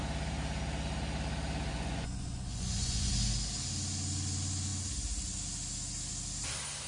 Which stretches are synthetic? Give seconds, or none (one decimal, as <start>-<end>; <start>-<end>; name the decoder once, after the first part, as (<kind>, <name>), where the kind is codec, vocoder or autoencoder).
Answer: 1.7-3.1 (vocoder, Vocos)